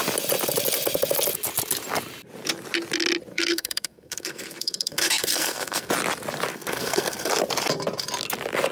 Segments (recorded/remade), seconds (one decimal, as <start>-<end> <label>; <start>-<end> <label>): 0.0-3.3 recorded; 3.3-5.9 remade; 5.9-6.5 recorded; 6.5-7.3 remade; 7.3-8.7 recorded